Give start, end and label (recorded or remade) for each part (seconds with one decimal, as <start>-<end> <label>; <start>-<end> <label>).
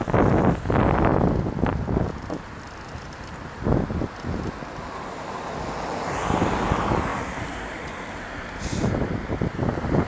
0.0-1.1 recorded; 1.1-3.9 remade; 3.9-7.1 recorded; 7.1-8.2 remade; 8.2-10.1 recorded